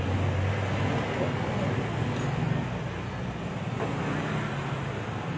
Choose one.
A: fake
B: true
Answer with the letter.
B